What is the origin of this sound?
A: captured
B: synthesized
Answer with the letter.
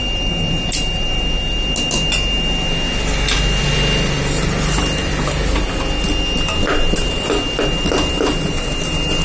A